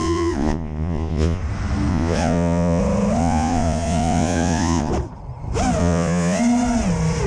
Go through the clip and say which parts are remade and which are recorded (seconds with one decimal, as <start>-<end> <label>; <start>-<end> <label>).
0.0-1.4 remade; 1.4-1.9 recorded; 1.9-2.8 remade; 2.8-3.2 recorded; 3.2-4.9 remade; 4.9-5.8 recorded; 5.8-6.4 remade; 6.4-7.3 recorded